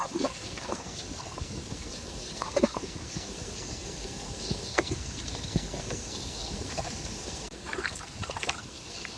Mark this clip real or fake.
fake